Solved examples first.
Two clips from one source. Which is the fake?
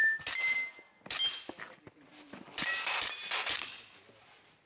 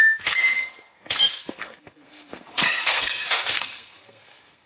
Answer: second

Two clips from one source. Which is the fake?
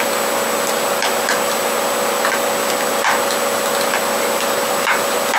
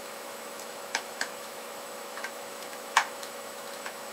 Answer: second